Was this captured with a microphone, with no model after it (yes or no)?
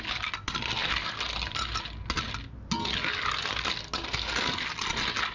yes